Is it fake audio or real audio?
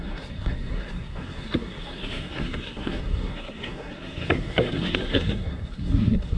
fake